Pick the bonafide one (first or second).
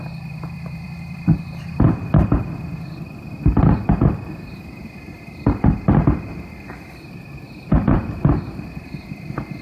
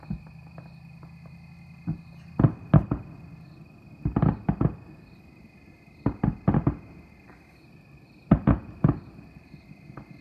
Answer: second